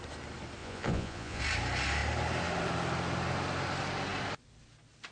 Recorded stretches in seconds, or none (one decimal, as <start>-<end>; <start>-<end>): 0.0-0.6; 1.4-5.1